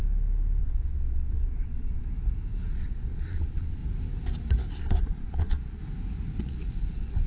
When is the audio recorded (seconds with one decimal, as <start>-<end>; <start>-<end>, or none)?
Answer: 0.0-0.6; 2.0-2.7; 3.8-4.8; 5.8-6.4